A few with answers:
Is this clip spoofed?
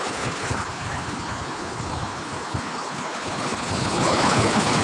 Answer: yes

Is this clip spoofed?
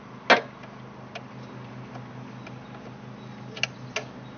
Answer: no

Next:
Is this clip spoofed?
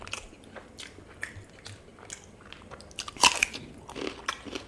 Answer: no